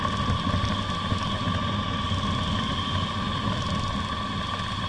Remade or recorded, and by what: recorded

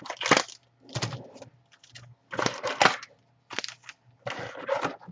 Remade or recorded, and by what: recorded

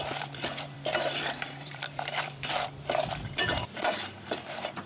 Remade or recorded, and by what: remade, vocoder, BigVGAN v2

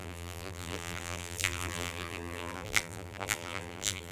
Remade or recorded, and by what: remade, vocoder, BigVGAN v2